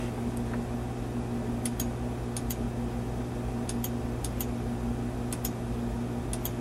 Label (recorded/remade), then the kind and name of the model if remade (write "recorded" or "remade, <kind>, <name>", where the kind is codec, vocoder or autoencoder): recorded